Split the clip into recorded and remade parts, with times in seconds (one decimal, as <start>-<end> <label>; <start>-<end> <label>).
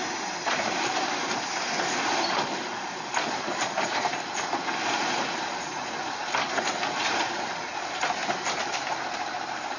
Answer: 0.0-6.2 remade; 6.2-7.2 recorded; 7.2-7.7 remade; 7.7-8.7 recorded; 8.7-9.8 remade